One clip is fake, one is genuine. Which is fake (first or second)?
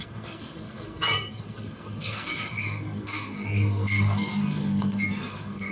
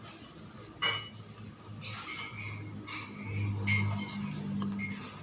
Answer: first